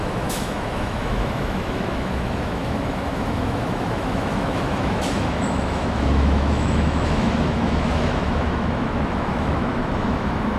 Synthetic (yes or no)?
yes